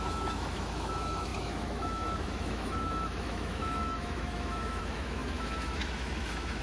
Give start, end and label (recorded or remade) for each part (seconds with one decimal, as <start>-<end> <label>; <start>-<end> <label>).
0.0-6.6 remade